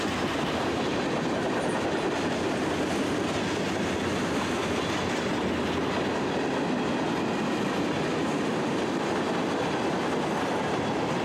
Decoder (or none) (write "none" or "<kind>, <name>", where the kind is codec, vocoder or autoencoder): none